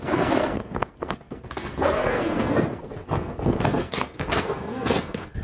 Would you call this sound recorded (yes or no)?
no